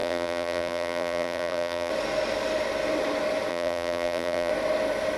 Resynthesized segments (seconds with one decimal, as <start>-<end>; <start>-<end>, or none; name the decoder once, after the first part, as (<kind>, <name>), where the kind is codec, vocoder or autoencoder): 0.0-1.9 (vocoder, BigVGAN v2); 3.5-4.5